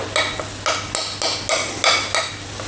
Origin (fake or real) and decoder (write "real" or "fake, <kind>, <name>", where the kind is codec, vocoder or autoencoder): real